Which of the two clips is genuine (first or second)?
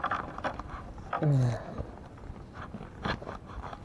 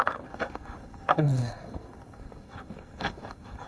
first